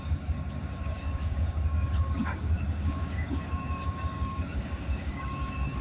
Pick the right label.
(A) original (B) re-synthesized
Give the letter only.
B